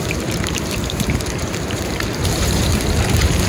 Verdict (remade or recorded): remade